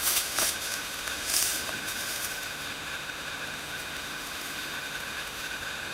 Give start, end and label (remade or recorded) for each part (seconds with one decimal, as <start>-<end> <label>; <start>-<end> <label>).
0.0-5.9 remade